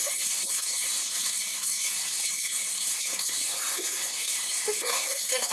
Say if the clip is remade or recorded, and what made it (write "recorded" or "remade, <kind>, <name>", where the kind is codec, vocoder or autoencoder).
remade, codec, SNAC